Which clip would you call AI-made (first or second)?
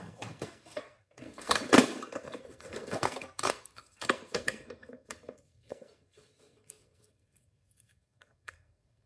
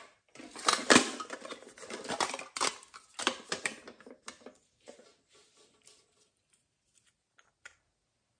first